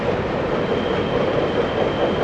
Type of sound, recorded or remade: recorded